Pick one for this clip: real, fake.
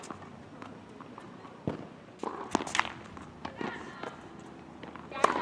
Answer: real